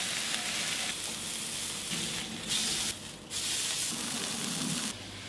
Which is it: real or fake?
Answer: real